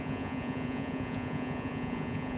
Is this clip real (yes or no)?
no